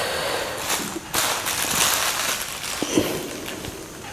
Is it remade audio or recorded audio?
recorded